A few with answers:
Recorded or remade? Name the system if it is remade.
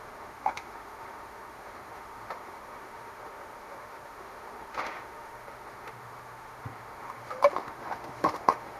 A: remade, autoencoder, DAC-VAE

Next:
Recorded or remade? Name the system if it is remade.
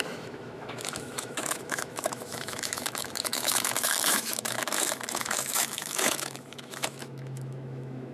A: remade, autoencoder, DAC-VAE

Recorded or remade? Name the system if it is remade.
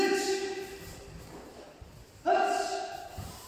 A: recorded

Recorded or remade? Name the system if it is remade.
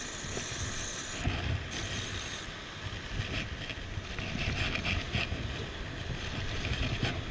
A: recorded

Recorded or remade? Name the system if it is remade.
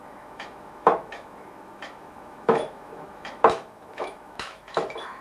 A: remade, autoencoder, DAC-VAE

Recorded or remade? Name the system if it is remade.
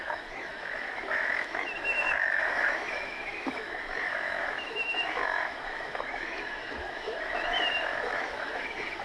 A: remade, autoencoder, DAC-VAE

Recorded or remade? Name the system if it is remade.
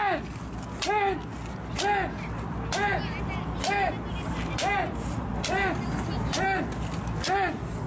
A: recorded